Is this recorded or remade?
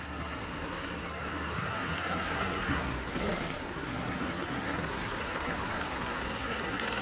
remade